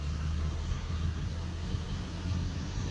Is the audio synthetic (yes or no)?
yes